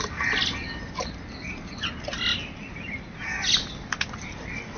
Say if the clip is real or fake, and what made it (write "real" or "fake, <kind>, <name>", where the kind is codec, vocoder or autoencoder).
real